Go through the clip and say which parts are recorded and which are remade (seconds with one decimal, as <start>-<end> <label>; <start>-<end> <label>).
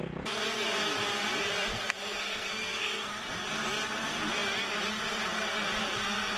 0.0-1.7 recorded; 1.7-3.1 remade; 3.1-6.4 recorded